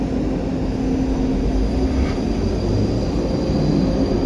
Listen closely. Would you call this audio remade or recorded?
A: recorded